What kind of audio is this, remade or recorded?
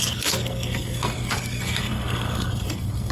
remade